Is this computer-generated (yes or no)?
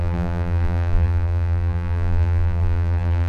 yes